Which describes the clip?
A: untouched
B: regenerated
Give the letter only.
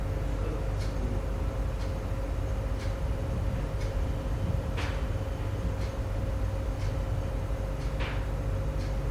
A